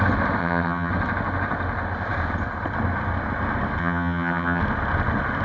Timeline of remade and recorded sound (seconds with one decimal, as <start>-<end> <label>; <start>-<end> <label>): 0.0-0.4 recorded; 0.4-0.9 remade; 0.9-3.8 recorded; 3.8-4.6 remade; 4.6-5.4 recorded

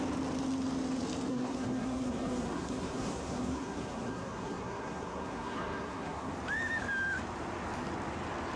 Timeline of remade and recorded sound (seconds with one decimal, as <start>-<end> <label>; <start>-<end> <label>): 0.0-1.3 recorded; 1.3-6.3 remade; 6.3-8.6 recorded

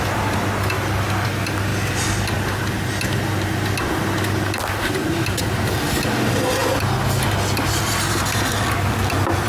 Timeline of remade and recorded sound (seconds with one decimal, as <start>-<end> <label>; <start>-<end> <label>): 0.0-9.5 recorded